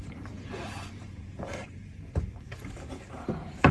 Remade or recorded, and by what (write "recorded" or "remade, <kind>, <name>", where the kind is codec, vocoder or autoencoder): remade, vocoder, BigVGAN v2